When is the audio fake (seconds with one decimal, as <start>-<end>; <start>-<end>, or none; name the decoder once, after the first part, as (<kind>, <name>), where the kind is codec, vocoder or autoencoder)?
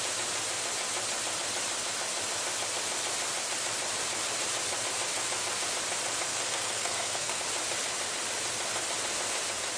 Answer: 6.3-7.4 (codec, SNAC)